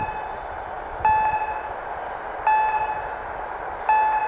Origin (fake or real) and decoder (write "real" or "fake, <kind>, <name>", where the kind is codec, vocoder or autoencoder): real